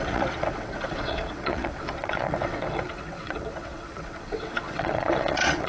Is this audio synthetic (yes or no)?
yes